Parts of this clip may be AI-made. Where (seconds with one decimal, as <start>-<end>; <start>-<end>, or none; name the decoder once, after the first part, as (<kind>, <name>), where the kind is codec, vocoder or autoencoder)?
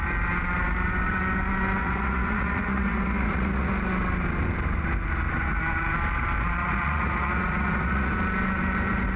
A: 1.8-3.7 (vocoder, Vocos); 6.6-8.1